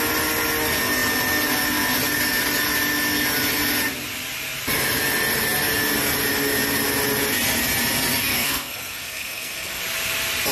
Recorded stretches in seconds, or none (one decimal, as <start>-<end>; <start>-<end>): 0.0-8.3; 9.8-10.5